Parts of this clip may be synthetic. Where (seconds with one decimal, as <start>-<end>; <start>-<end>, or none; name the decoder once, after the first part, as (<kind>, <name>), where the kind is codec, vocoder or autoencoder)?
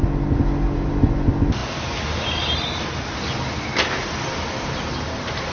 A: none